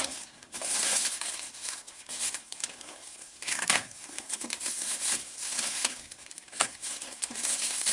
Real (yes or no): no